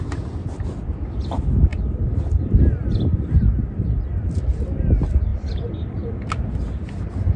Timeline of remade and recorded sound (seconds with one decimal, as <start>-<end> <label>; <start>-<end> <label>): 0.0-5.3 recorded; 5.3-6.3 remade; 6.3-7.4 recorded

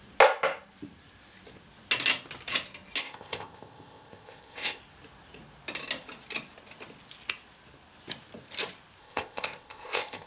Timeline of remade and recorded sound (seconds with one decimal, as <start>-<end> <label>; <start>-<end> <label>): 0.0-3.0 recorded; 3.0-4.8 remade; 4.8-9.0 recorded; 9.0-10.3 remade

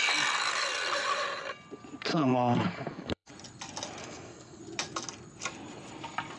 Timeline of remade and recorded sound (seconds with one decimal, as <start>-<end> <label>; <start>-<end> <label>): 0.0-2.1 recorded; 2.1-3.3 remade; 3.3-4.0 recorded; 4.0-4.6 remade; 4.6-6.4 recorded

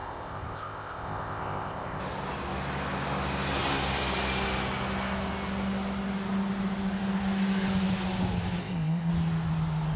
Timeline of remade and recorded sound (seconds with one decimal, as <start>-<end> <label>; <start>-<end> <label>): 0.0-2.0 remade; 2.0-8.6 recorded; 8.6-9.1 remade; 9.1-10.0 recorded

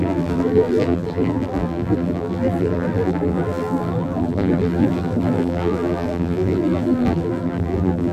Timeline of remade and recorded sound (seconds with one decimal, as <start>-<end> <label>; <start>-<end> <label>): 0.0-8.1 remade

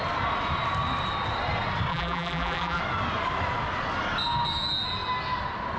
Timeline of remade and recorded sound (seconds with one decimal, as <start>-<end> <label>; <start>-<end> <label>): 0.0-1.9 recorded; 1.9-2.8 remade; 2.8-5.8 recorded

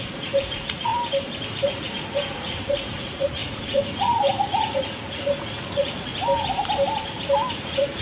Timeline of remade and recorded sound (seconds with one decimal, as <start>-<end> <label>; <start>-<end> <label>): 0.0-0.9 remade; 0.9-1.5 recorded; 1.5-6.1 remade; 6.1-7.5 recorded; 7.5-8.0 remade